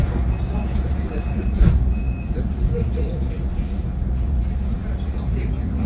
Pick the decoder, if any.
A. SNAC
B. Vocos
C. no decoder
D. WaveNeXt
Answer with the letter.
B